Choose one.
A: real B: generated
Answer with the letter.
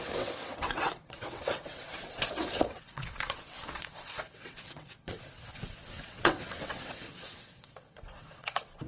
B